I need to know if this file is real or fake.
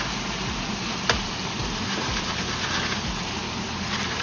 fake